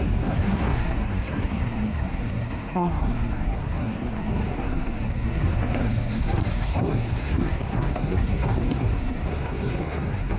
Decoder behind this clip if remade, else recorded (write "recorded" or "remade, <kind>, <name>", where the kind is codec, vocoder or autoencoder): remade, codec, SNAC